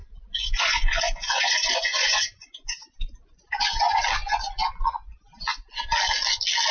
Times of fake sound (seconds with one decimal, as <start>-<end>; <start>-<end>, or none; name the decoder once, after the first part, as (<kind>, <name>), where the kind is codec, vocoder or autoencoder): 0.0-4.0 (vocoder, Vocos)